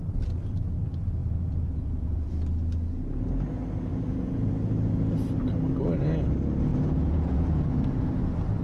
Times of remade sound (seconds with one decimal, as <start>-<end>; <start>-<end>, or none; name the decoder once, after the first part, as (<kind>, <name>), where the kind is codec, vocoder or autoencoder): 1.2-2.3 (vocoder, Vocos); 3.9-4.5; 6.7-7.8